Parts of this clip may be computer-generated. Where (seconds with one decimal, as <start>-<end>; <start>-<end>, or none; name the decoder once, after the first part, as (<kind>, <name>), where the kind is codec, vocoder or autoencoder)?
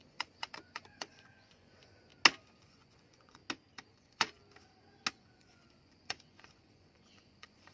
0.0-2.1 (vocoder, Vocos); 2.6-3.4; 3.9-4.4; 5.1-7.7